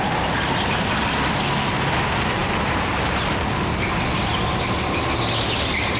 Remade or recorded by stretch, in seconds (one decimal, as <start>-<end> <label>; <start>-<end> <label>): 0.0-6.0 recorded